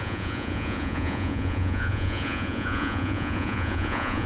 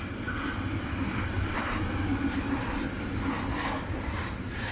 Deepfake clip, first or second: first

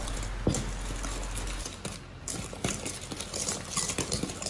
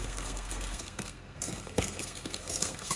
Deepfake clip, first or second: second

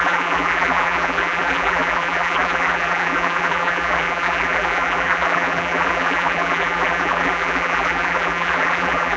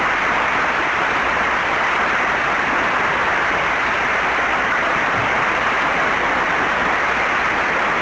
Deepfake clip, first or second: first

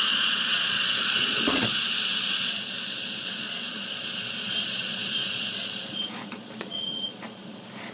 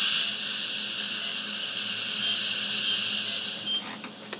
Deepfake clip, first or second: first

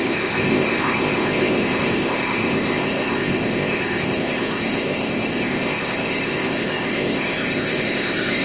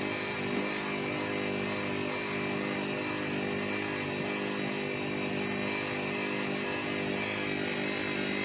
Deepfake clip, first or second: first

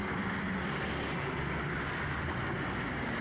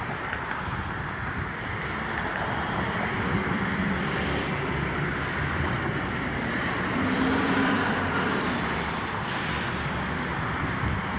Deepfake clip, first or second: second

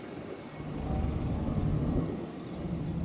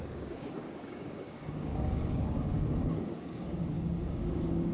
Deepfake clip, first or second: second